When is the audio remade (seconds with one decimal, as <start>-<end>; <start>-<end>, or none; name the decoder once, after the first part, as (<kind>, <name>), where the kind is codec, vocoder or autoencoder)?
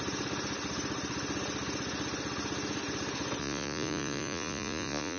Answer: 3.4-5.2 (vocoder, Vocos)